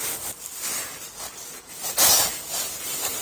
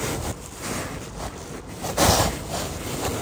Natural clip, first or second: first